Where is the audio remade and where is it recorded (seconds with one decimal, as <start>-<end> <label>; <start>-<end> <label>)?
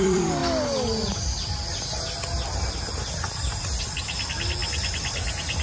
0.0-0.4 remade; 0.4-3.8 recorded; 3.8-4.6 remade; 4.6-5.6 recorded